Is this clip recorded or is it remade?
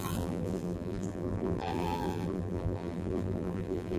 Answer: remade